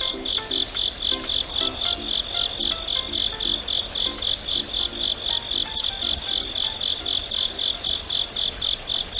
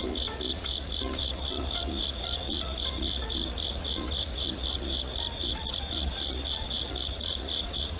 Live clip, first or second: first